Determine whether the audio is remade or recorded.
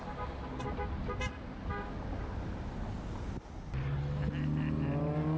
recorded